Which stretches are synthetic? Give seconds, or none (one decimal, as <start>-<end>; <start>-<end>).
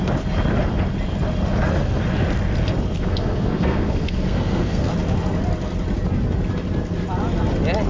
3.1-4.9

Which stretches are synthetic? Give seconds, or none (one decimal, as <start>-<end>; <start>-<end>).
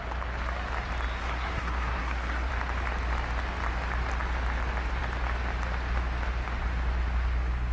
1.2-2.5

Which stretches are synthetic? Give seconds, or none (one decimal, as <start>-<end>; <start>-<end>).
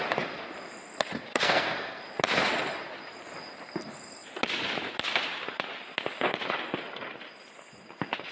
1.3-2.0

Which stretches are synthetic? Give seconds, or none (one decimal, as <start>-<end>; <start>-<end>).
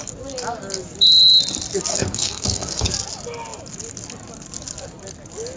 1.9-2.9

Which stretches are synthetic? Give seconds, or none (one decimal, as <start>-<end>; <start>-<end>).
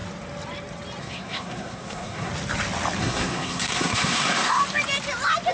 1.0-2.3; 3.0-4.6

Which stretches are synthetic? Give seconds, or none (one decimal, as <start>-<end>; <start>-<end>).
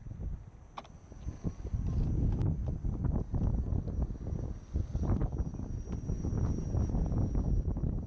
none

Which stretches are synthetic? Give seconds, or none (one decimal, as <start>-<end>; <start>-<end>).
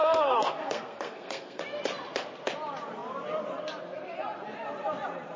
0.0-1.6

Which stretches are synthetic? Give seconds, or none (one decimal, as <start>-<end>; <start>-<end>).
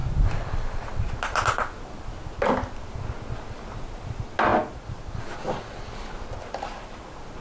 none